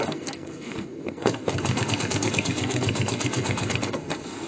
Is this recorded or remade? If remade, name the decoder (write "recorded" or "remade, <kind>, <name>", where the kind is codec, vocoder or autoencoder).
remade, codec, SNAC